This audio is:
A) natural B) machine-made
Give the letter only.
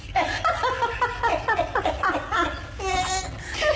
A